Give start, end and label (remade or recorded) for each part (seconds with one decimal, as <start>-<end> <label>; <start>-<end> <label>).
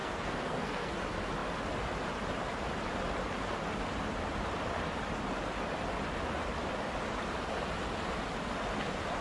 0.0-0.9 remade; 0.9-9.2 recorded